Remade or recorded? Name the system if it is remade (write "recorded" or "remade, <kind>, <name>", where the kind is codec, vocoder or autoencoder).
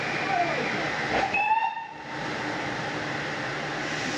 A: recorded